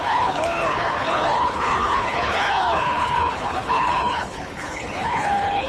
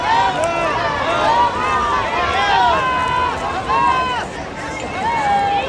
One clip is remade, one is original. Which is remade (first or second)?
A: first